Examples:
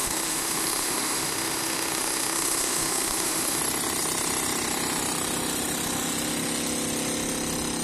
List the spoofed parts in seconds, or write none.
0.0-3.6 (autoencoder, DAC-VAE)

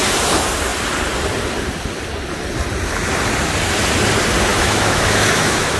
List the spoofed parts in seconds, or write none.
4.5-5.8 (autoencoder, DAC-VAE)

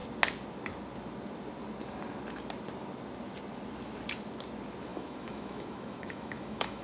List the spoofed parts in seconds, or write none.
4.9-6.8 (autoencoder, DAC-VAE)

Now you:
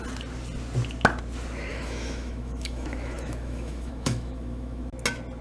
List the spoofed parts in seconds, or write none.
1.7-4.9 (autoencoder, DAC-VAE)